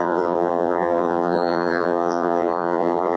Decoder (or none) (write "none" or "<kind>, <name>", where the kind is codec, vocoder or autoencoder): vocoder, BigVGAN v2